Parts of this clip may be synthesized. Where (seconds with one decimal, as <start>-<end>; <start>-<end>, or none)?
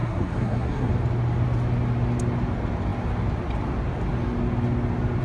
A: 0.0-0.9